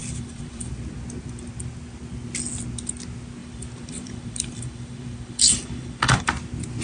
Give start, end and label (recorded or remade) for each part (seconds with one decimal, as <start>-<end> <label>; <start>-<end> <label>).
0.0-0.7 remade; 0.7-3.4 recorded; 3.4-6.3 remade; 6.3-6.8 recorded